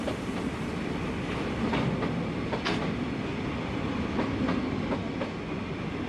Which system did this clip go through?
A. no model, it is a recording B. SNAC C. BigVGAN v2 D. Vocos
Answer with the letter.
A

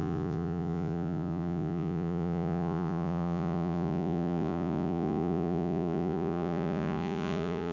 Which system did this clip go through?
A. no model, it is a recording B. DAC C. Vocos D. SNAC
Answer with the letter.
C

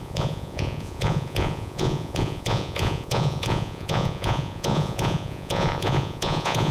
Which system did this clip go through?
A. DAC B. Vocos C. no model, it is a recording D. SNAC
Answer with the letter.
B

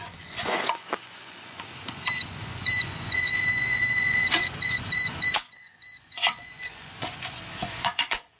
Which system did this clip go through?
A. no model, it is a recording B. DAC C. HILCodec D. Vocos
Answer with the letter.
D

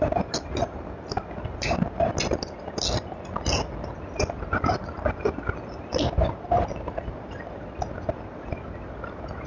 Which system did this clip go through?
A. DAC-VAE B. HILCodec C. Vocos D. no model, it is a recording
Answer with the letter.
D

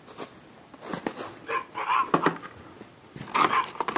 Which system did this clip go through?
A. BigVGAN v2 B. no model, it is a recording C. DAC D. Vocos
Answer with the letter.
B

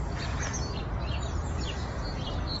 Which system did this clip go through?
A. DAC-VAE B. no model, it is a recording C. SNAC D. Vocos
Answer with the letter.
B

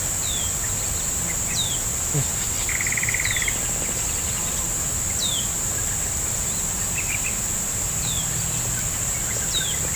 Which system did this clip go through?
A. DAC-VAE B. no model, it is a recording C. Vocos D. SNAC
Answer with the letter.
B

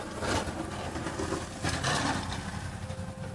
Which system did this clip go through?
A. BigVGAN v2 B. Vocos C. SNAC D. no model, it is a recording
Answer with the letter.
D